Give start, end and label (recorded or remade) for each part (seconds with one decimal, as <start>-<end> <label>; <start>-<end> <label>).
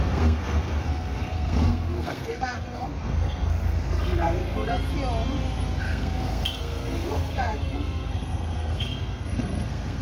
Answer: 0.0-4.9 remade; 4.9-5.8 recorded; 5.8-10.0 remade